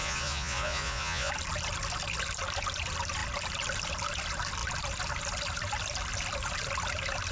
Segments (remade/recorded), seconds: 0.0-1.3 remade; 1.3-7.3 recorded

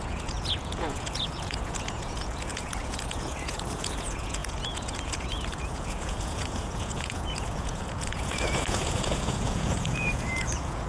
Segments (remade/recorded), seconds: 0.0-10.9 remade

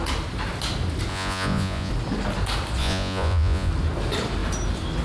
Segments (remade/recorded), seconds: 0.0-1.1 recorded; 1.1-1.9 remade; 1.9-2.8 recorded; 2.8-3.7 remade; 3.7-5.0 recorded

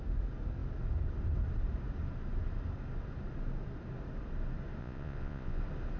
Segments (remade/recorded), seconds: 0.0-4.8 recorded; 4.8-5.6 remade; 5.6-6.0 recorded

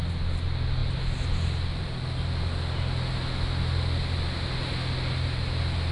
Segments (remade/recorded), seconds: 0.0-5.9 recorded